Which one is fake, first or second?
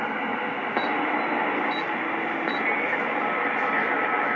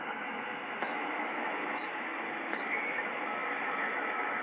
second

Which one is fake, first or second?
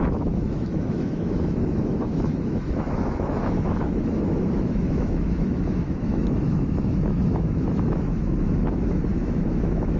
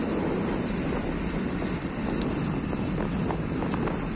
first